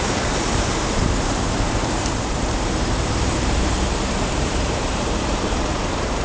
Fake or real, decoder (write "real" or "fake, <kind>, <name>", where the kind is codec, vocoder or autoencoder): fake, vocoder, BigVGAN v2